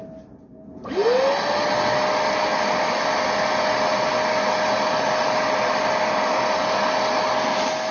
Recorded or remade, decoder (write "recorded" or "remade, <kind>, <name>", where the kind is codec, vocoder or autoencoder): recorded